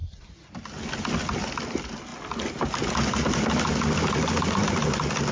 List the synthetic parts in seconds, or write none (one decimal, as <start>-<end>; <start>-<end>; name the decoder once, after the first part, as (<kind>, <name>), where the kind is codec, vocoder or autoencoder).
none